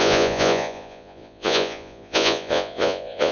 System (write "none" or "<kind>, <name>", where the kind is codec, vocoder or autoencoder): vocoder, Vocos